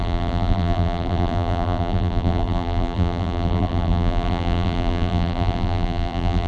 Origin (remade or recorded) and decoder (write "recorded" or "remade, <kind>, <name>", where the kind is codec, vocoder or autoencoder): remade, vocoder, BigVGAN v2